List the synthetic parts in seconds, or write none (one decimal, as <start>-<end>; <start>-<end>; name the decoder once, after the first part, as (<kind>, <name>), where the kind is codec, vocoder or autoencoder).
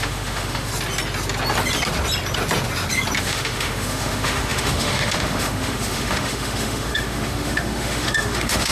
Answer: 0.0-0.7 (autoencoder, DAC-VAE); 3.2-8.7